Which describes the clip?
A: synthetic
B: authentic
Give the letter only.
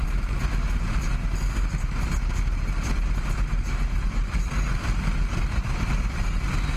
B